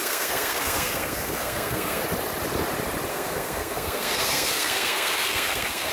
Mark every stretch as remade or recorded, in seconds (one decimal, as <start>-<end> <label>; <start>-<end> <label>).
0.0-2.0 remade; 2.0-3.1 recorded; 3.1-5.9 remade